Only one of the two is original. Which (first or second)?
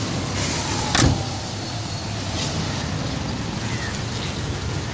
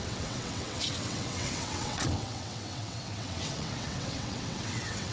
first